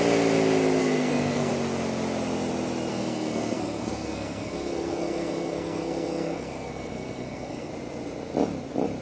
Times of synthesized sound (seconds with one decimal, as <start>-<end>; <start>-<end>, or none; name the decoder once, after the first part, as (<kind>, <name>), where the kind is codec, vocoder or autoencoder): 0.8-1.5 (codec, SNAC); 2.9-7.7